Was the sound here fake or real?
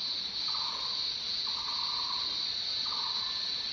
real